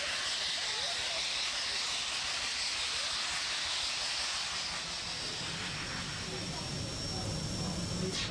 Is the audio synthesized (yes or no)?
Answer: no